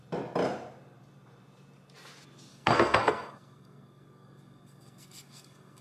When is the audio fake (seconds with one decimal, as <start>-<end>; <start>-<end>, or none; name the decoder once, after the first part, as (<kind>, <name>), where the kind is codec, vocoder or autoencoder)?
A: 2.5-5.8 (codec, SNAC)